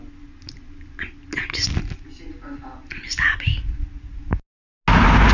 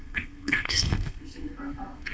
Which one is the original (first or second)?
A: first